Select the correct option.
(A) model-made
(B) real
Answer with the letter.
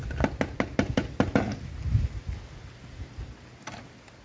B